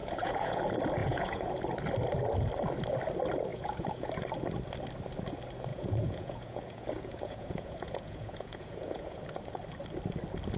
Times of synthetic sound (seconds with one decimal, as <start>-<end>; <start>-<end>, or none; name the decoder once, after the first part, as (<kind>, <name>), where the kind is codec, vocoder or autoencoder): 0.0-0.6 (vocoder, Vocos); 1.0-1.5; 3.5-4.1; 5.7-9.2